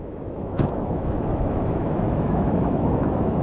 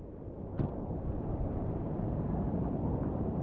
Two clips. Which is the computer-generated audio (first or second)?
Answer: first